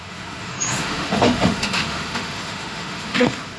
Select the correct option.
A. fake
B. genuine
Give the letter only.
A